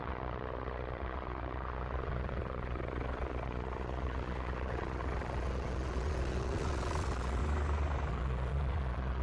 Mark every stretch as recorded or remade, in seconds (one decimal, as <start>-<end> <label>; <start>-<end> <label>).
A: 0.0-7.4 remade; 7.4-8.1 recorded; 8.1-9.2 remade